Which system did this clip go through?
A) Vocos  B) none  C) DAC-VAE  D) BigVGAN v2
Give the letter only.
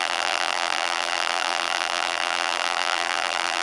D